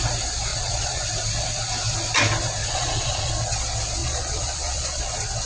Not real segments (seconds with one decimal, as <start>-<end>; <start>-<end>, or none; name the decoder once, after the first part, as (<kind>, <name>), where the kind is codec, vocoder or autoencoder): 0.5-1.0 (vocoder, Vocos); 2.6-3.3; 4.0-5.0